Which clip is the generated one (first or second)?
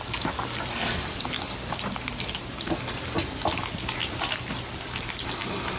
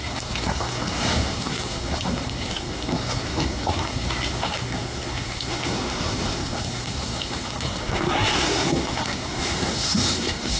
second